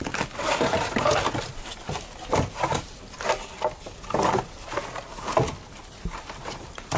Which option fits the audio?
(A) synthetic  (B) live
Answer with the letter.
B